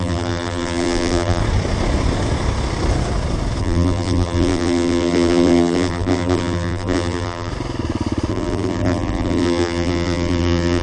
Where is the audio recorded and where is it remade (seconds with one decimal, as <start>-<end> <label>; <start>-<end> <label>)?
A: 0.0-1.4 remade; 1.4-3.6 recorded; 3.6-7.5 remade; 7.5-8.3 recorded; 8.3-10.8 remade